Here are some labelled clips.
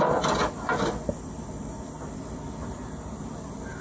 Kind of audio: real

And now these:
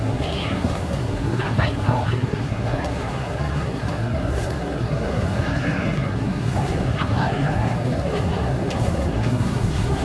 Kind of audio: fake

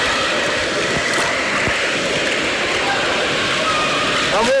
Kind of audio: real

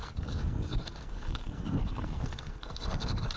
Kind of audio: fake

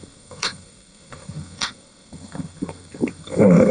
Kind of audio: fake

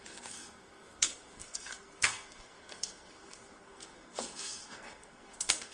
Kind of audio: fake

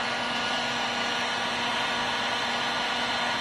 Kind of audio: real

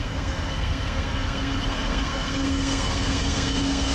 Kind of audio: fake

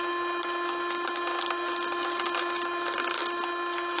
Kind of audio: real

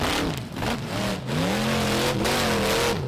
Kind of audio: real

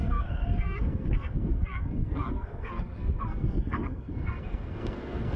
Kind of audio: fake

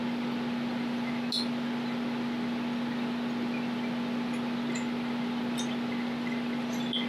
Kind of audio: real